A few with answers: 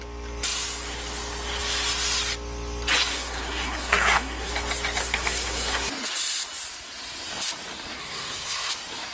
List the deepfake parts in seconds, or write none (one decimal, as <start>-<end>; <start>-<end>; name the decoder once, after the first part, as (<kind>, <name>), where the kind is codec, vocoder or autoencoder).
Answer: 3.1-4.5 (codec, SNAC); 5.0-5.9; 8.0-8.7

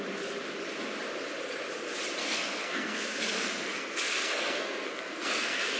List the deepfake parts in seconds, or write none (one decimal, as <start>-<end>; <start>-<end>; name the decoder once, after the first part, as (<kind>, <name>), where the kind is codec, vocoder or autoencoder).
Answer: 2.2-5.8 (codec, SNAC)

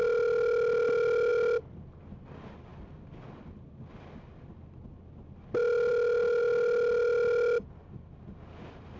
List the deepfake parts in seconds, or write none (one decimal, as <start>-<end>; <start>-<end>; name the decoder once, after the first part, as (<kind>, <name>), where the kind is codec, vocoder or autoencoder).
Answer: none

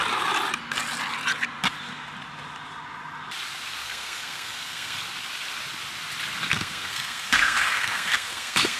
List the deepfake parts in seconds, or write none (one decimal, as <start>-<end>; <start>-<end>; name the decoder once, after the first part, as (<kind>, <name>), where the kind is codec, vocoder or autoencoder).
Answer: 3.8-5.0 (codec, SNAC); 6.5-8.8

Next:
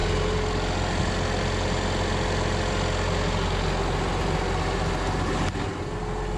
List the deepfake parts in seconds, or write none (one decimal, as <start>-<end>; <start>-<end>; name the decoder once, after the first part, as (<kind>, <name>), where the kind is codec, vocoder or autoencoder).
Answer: none

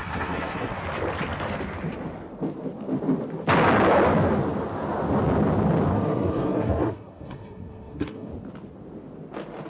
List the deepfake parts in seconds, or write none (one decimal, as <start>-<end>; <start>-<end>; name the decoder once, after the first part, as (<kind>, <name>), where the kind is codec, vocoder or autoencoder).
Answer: 0.0-0.8 (codec, SNAC); 5.9-8.3

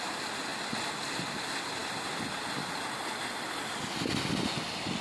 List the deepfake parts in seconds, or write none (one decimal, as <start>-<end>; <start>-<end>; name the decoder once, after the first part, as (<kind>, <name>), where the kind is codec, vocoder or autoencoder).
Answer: none